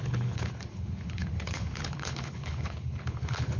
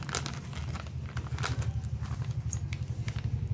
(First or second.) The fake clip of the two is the first